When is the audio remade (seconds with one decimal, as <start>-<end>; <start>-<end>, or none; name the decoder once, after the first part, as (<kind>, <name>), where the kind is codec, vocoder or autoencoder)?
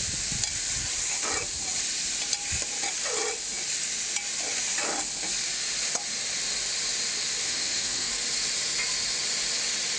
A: 7.4-8.1 (autoencoder, DAC-VAE)